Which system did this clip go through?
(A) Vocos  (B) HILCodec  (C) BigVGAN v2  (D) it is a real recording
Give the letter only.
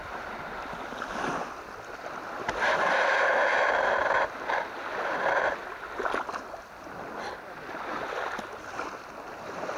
D